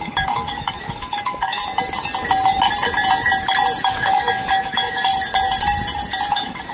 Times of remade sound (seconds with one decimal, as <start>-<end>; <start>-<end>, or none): 0.0-1.6; 3.8-5.1; 6.3-6.7